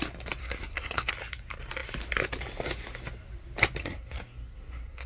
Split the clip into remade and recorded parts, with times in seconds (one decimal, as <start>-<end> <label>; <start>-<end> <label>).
0.0-0.4 recorded; 0.4-1.1 remade; 1.1-3.8 recorded; 3.8-5.1 remade